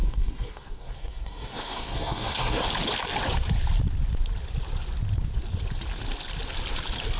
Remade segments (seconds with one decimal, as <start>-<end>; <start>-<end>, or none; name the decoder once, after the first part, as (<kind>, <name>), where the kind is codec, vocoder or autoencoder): 0.0-2.7 (codec, SNAC)